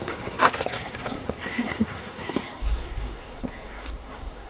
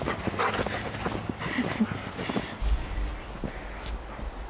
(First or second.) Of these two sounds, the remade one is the first